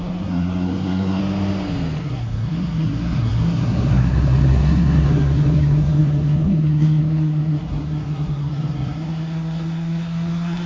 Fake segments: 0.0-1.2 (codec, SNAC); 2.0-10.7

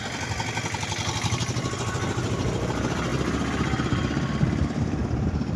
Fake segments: none

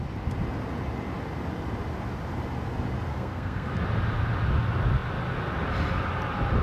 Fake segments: 3.1-3.7 (codec, SNAC)

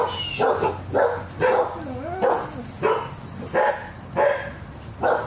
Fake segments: none

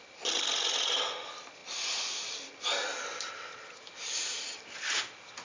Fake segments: none

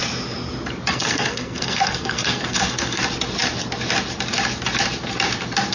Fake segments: 0.9-3.0 (codec, SNAC)

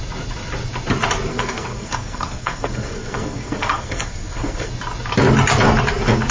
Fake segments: 1.3-4.7 (codec, SNAC)